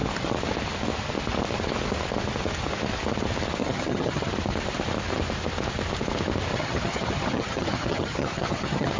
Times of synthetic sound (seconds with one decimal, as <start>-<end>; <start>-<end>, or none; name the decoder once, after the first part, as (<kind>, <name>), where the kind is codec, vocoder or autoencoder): 3.6-4.3 (vocoder, HiFi-GAN); 6.5-9.0

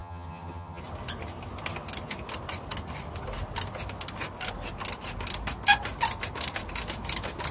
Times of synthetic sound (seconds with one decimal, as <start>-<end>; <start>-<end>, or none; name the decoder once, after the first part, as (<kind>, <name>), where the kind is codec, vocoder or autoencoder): 0.0-0.8 (vocoder, HiFi-GAN)

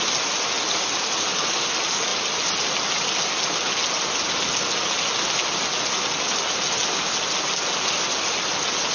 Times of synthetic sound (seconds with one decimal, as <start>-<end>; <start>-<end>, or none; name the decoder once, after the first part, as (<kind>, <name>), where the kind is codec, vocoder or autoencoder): none